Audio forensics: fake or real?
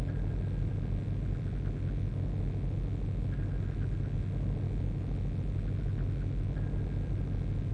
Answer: real